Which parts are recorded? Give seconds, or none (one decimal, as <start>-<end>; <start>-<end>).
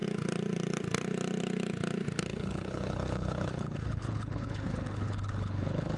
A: 0.0-2.3